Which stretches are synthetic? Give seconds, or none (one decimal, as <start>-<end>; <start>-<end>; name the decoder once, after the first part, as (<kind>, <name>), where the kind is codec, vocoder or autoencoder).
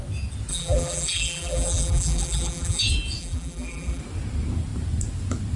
0.5-2.8 (vocoder, BigVGAN v2); 3.2-4.0